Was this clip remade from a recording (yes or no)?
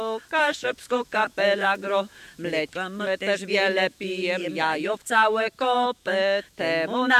yes